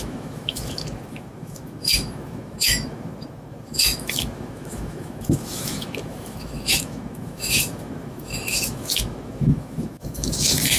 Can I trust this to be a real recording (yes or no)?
no